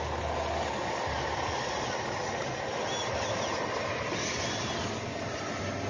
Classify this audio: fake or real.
real